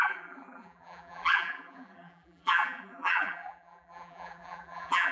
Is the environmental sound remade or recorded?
remade